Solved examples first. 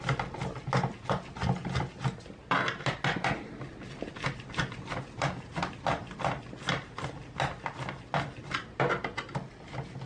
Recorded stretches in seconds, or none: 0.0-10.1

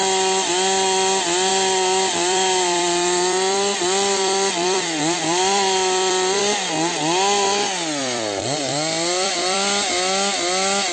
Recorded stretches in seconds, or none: 0.5-1.5; 6.7-8.0; 9.9-10.9